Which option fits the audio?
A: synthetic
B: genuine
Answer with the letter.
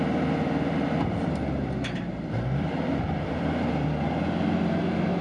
A